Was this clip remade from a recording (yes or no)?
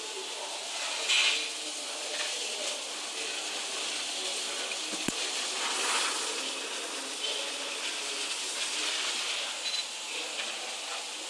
no